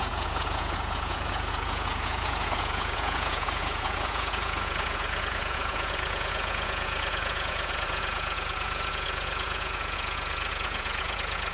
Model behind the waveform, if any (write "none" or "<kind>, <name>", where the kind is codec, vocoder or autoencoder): vocoder, Vocos